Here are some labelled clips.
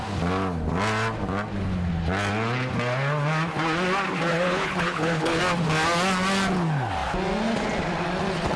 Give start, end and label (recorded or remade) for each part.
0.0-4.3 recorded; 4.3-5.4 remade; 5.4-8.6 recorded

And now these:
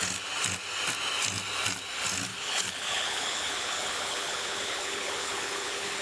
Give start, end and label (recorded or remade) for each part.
0.0-2.3 recorded; 2.3-6.0 remade

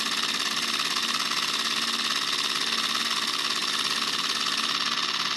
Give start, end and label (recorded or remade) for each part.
0.0-5.4 recorded

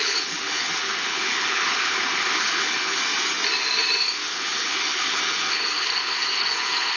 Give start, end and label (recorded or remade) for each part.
0.0-3.0 remade; 3.0-4.0 recorded; 4.0-7.0 remade